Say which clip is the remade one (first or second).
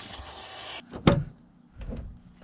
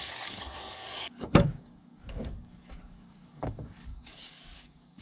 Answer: second